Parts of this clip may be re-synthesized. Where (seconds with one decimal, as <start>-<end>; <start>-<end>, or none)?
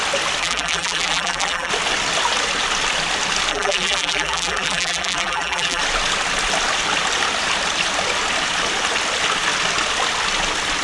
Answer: 0.4-1.7; 3.5-5.8